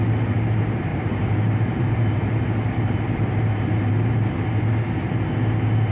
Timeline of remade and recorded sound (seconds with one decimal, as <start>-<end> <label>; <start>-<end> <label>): 0.0-0.9 recorded; 0.9-4.4 remade; 4.4-5.9 recorded